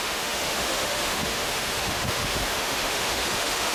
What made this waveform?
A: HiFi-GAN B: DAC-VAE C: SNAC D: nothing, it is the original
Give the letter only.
B